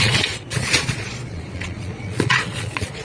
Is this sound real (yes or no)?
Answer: no